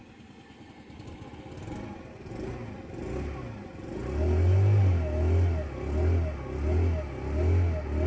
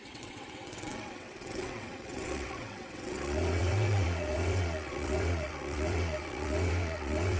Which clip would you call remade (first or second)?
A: second